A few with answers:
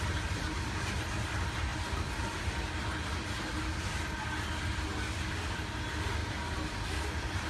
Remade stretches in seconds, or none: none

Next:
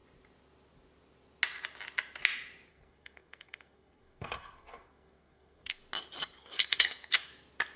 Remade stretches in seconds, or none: 2.7-5.8 (codec, SNAC); 6.4-7.3

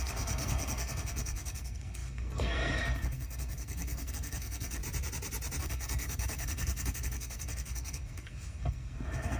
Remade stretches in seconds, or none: 0.0-4.8 (codec, SNAC); 5.6-9.4

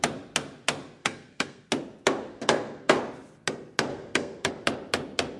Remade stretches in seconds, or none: 1.0-1.7 (codec, SNAC); 2.3-3.0; 3.9-4.5

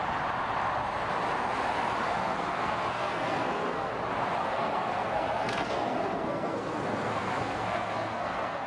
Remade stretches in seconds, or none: 2.0-3.9 (codec, SNAC); 4.4-8.7

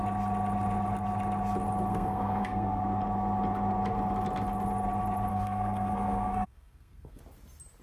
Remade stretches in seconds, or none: 1.9-2.8 (codec, SNAC); 5.3-7.2

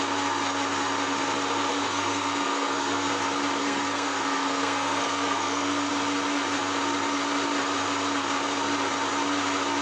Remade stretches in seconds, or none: 1.7-3.1 (codec, SNAC); 3.6-5.9